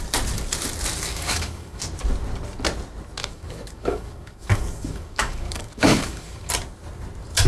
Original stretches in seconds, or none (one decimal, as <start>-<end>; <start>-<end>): 0.0-1.1; 1.8-3.2; 6.5-7.5